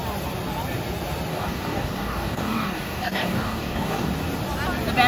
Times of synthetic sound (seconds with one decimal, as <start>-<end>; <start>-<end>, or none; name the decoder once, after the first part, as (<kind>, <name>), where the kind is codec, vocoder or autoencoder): 1.3-4.1 (codec, DAC)